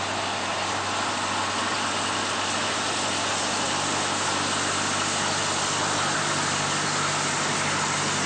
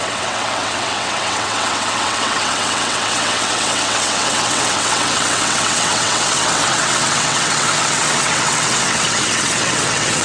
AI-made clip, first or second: second